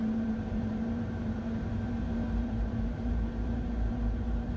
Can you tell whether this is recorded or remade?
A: remade